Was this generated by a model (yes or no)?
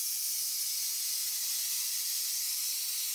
no